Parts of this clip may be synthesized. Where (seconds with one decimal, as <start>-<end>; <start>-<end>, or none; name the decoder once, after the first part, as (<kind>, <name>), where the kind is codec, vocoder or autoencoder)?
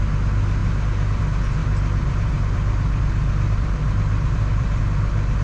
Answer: 1.6-4.8 (vocoder, BigVGAN v2)